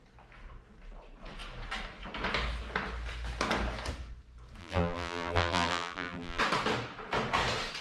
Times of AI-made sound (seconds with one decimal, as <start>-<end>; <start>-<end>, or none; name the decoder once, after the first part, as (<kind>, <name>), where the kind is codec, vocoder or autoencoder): 4.6-6.4 (vocoder, BigVGAN v2)